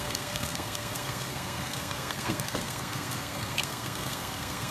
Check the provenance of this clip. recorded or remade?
remade